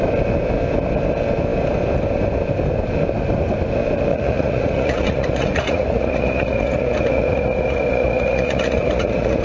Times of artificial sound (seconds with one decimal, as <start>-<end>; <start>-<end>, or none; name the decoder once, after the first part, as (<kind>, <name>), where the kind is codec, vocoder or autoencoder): 4.1-9.4 (vocoder, Vocos)